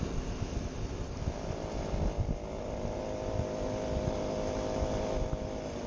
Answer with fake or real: real